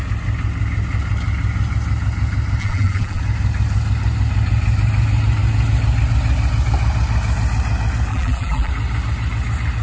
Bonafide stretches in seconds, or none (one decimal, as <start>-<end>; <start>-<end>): 0.0-2.6; 3.2-8.1; 8.7-9.8